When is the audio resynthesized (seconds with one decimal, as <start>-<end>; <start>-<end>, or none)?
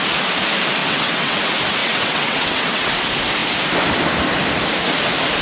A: 0.8-1.4; 1.8-2.9